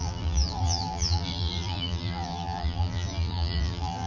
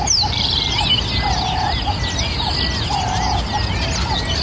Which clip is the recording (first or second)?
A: second